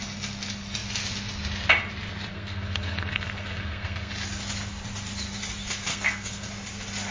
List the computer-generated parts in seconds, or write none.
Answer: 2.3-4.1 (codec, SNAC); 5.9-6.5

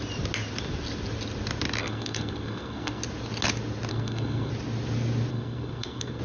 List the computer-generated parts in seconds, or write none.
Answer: 1.8-3.0 (codec, SNAC); 3.9-4.5; 5.3-6.2

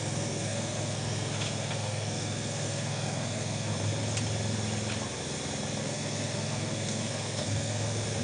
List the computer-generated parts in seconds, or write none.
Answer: 0.0-3.7 (codec, SNAC); 5.8-8.2

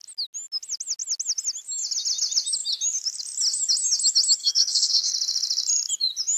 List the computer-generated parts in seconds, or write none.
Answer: 4.4-5.1 (codec, SNAC)

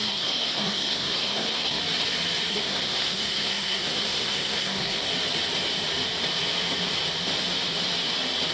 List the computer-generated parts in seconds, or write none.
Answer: 0.0-1.8 (codec, SNAC); 2.5-5.1

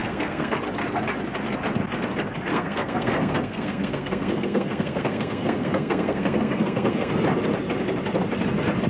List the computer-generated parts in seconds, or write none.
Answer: 0.0-0.6 (codec, SNAC); 2.5-7.1

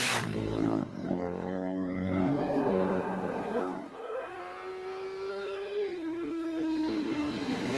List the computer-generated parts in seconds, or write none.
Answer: 0.0-4.4 (codec, SNAC); 5.3-7.8

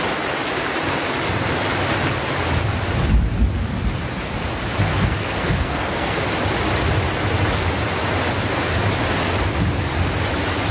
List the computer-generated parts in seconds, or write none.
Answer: 4.9-6.2 (codec, SNAC)